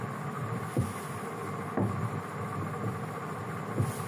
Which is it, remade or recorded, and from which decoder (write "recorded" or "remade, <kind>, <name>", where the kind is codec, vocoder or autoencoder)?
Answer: recorded